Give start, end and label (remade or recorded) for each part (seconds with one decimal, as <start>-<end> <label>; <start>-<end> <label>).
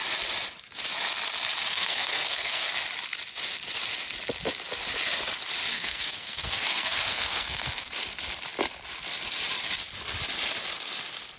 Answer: 0.0-1.7 recorded; 1.7-2.7 remade; 2.7-5.7 recorded; 5.7-7.9 remade; 7.9-11.4 recorded